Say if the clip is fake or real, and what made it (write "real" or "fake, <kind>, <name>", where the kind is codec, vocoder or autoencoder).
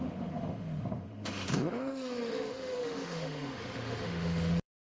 fake, autoencoder, DAC-VAE